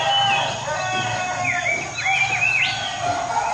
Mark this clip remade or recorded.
recorded